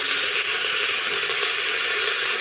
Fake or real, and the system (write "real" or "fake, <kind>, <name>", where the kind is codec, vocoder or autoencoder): real